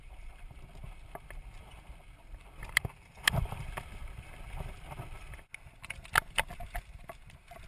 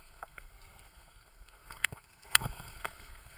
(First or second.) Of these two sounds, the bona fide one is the first